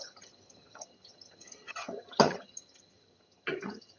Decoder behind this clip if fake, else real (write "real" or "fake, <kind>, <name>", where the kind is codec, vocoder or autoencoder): fake, vocoder, HiFi-GAN